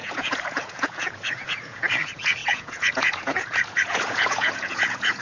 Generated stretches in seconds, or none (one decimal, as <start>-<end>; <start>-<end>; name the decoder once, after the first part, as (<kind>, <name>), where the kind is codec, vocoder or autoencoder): 0.0-5.2 (vocoder, Vocos)